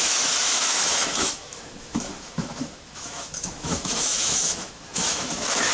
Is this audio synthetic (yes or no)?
yes